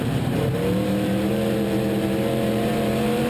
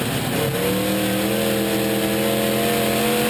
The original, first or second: second